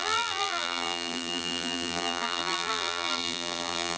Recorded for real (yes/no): no